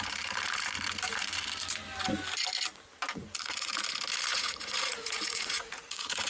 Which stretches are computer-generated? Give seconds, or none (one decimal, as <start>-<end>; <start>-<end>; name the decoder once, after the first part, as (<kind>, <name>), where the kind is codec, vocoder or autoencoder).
3.1-3.7 (vocoder, Vocos); 4.3-6.3